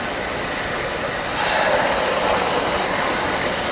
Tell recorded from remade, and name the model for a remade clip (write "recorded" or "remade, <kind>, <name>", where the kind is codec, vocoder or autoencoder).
remade, vocoder, BigVGAN v2